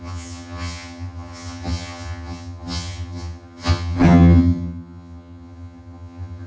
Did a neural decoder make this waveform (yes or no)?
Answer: yes